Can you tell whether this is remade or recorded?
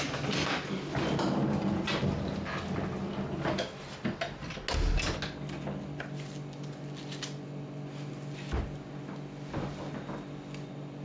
recorded